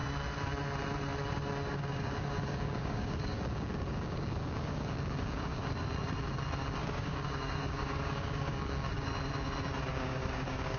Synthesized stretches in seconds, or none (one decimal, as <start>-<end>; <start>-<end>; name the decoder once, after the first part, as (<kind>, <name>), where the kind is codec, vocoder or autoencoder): 1.7-5.7 (codec, DAC); 6.8-9.1; 9.9-10.8